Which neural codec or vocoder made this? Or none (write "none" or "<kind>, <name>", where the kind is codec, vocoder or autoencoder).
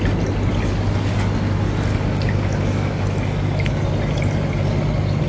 none